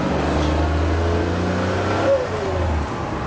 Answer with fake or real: real